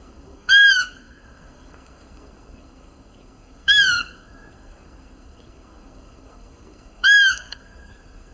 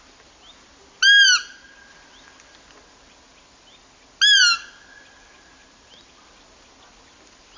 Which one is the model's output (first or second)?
first